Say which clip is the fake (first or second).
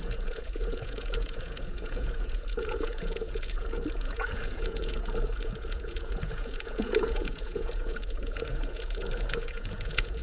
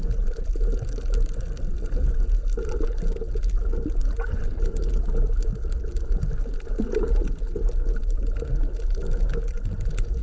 first